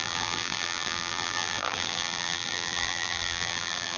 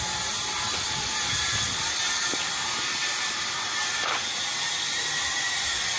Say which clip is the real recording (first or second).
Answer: second